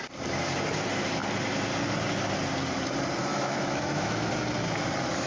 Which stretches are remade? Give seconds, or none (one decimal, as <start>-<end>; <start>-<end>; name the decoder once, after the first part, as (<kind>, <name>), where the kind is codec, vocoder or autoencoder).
3.3-4.3 (autoencoder, DAC-VAE)